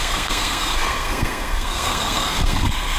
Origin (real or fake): fake